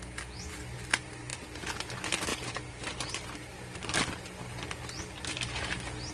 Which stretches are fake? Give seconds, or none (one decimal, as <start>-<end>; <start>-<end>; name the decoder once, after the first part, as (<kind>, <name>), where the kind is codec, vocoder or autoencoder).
none

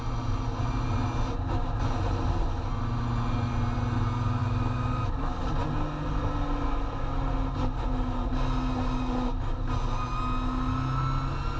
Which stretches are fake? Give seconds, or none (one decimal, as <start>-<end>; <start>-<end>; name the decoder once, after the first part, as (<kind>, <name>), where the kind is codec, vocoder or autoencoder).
none